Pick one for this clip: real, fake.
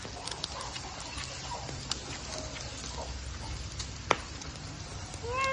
real